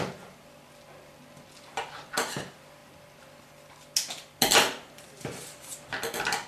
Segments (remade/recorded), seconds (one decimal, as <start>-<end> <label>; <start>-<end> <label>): 0.0-6.5 recorded